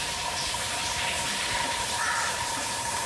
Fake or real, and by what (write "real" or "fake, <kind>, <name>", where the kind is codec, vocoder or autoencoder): fake, vocoder, BigVGAN v2